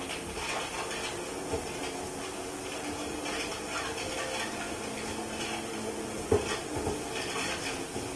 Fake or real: real